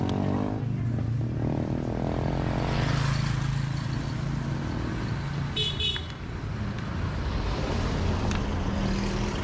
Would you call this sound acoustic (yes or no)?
yes